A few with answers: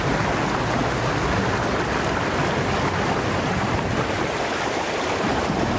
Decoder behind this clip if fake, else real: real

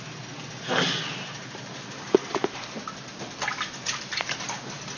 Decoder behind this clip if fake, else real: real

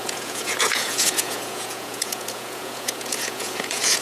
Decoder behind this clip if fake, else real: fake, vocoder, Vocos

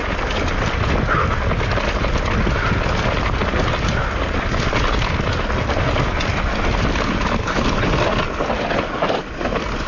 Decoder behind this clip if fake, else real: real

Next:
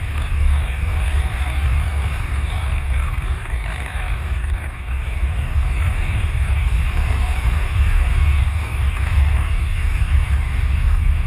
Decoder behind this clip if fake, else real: fake, codec, DAC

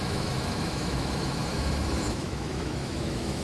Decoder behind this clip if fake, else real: fake, autoencoder, DAC-VAE